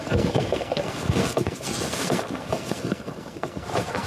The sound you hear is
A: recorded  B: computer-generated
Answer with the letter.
B